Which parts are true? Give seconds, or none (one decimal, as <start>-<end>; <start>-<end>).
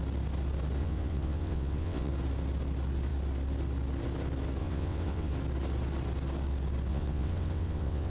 0.0-0.8; 2.1-4.6; 5.3-6.9